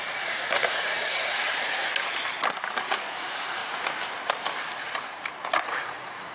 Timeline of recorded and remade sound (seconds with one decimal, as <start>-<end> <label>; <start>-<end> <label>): 0.0-1.8 remade; 1.8-3.1 recorded; 3.1-3.6 remade; 3.6-5.6 recorded; 5.6-6.3 remade